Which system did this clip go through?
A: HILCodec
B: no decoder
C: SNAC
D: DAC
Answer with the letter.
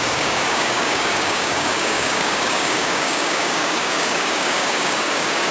D